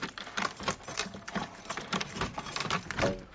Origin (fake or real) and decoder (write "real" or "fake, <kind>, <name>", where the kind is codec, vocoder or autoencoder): fake, vocoder, BigVGAN v2